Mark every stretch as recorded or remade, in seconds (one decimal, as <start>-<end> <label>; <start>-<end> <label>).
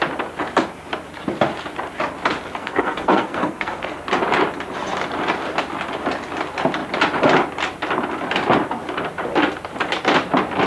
0.0-2.6 recorded; 2.6-4.0 remade; 4.0-10.7 recorded